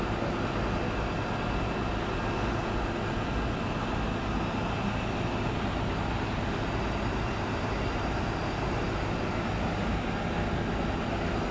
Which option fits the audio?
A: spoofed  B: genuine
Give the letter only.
B